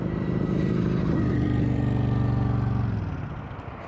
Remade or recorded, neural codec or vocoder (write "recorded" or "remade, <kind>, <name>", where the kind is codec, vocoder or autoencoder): recorded